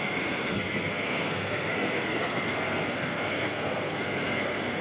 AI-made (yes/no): yes